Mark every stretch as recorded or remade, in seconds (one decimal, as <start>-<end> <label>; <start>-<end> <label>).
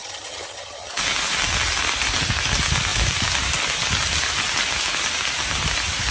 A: 0.0-0.9 remade; 0.9-6.1 recorded